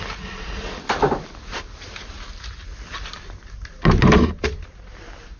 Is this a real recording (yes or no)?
yes